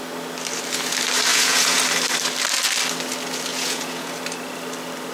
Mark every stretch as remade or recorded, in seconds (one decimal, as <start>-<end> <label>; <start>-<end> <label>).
0.0-1.3 recorded; 1.3-1.8 remade; 1.8-3.5 recorded; 3.5-4.1 remade; 4.1-5.1 recorded